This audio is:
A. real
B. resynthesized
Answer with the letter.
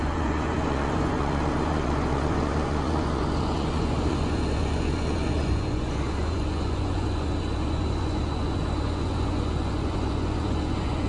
B